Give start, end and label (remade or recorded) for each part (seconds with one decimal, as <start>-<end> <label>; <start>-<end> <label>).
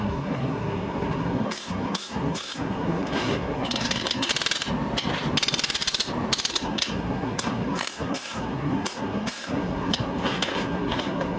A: 0.0-4.3 remade; 4.3-6.5 recorded; 6.5-11.4 remade